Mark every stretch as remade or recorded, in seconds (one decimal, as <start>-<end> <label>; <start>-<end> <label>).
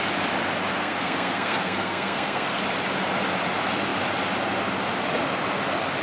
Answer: 0.0-0.8 recorded; 0.8-2.6 remade; 2.6-6.0 recorded